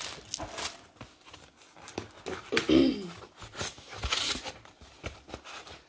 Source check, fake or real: real